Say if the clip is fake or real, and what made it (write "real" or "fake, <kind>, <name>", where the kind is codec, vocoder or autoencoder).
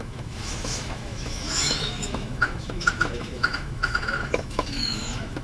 fake, autoencoder, DAC-VAE